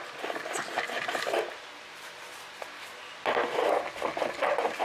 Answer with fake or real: real